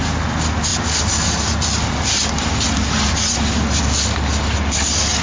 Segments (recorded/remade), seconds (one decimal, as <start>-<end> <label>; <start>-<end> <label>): 0.0-5.2 recorded